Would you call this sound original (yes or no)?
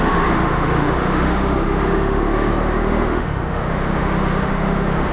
no